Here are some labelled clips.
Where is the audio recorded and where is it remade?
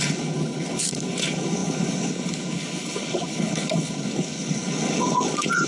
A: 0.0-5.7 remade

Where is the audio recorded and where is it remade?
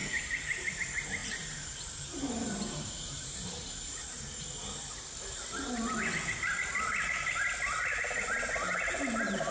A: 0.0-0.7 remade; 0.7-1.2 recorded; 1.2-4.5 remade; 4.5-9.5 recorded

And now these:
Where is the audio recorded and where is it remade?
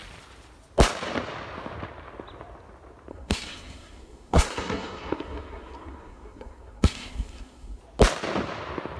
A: 0.0-3.1 recorded; 3.1-7.8 remade; 7.8-9.0 recorded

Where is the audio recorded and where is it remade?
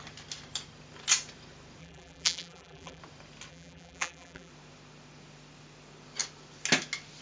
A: 0.0-1.8 recorded; 1.8-3.0 remade; 3.0-3.5 recorded; 3.5-4.5 remade; 4.5-7.2 recorded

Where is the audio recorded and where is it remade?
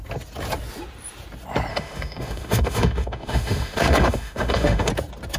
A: 0.0-1.7 recorded; 1.7-4.9 remade; 4.9-5.4 recorded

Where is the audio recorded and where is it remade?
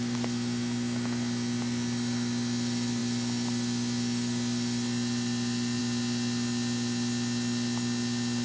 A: 0.0-8.4 recorded